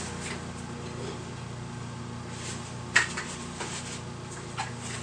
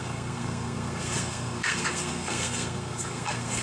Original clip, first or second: first